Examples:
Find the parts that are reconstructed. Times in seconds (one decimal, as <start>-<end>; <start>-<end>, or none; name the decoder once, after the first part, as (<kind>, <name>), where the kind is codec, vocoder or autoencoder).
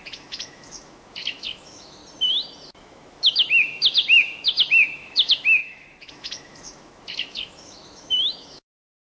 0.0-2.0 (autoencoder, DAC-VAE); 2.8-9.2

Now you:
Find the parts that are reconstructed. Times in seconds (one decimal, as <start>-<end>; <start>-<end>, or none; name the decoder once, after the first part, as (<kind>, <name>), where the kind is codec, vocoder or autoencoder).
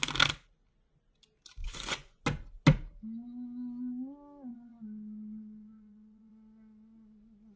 1.6-2.2 (vocoder, Vocos); 4.5-6.3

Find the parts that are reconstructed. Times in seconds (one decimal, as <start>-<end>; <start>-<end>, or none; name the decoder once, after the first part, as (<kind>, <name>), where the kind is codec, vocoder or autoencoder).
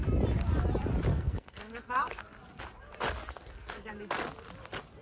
1.1-2.2 (codec, SNAC); 3.3-3.9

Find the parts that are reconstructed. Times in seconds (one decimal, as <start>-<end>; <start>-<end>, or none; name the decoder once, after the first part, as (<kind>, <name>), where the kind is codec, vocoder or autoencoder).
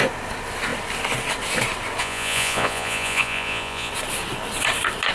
2.0-3.9 (vocoder, Vocos)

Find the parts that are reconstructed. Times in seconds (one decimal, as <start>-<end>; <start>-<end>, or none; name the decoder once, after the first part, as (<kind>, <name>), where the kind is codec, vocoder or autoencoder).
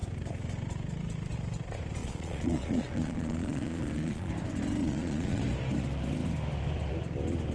2.0-4.3 (vocoder, Vocos); 4.8-5.4